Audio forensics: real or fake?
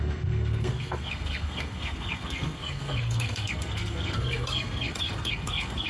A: fake